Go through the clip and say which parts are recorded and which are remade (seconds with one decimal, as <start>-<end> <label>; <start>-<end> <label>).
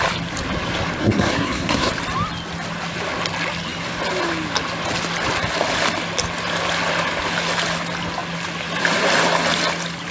0.0-1.0 recorded; 1.0-1.9 remade; 1.9-10.1 recorded